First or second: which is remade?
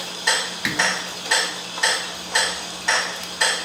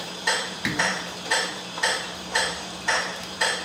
second